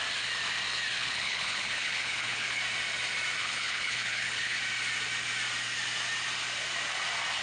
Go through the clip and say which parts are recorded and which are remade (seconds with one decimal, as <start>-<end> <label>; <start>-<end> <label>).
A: 0.0-1.0 recorded; 1.0-2.6 remade; 2.6-3.4 recorded; 3.4-4.6 remade; 4.6-7.4 recorded